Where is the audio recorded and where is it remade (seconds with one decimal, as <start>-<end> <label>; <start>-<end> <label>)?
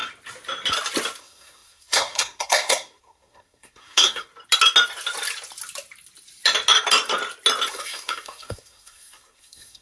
0.0-1.2 recorded; 1.2-4.3 remade; 4.3-7.7 recorded; 7.7-9.8 remade